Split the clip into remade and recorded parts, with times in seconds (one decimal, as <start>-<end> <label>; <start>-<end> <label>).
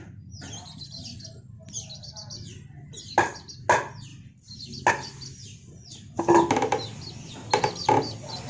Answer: 0.0-8.5 recorded